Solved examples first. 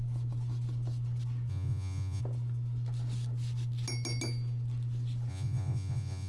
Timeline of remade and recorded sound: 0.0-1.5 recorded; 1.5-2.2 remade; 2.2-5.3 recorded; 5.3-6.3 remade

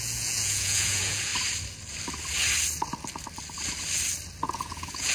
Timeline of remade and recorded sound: 0.0-1.3 remade; 1.3-4.4 recorded; 4.4-5.1 remade

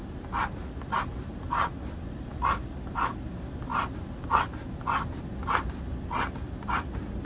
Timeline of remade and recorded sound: 0.0-7.3 recorded

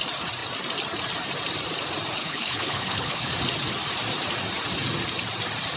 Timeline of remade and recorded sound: 0.0-2.2 recorded; 2.2-3.3 remade; 3.3-5.8 recorded

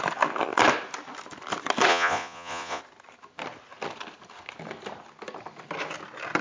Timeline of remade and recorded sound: 0.0-1.9 recorded; 1.9-2.8 remade; 2.8-6.4 recorded

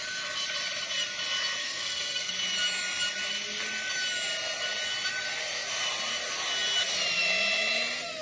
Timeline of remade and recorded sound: 0.0-1.6 recorded; 1.6-2.3 remade; 2.3-8.2 recorded

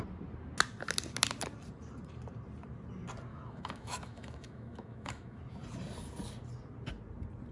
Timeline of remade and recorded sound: 0.0-3.3 recorded; 3.3-5.4 remade; 5.4-7.5 recorded